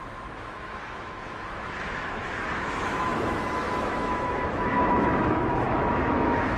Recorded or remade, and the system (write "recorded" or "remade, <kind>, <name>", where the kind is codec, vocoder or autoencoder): remade, autoencoder, DAC-VAE